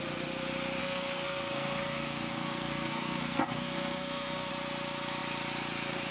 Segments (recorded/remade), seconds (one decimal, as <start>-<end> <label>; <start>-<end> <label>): 0.0-0.8 recorded; 0.8-4.5 remade; 4.5-6.1 recorded